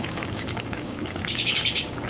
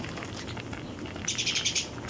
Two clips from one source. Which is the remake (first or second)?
first